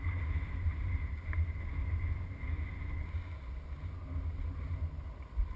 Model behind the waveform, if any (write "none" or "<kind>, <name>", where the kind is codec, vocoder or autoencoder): none